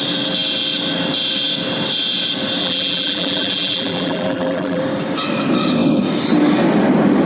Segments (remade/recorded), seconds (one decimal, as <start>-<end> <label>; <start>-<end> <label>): 0.0-2.6 recorded; 2.6-4.8 remade; 4.8-7.3 recorded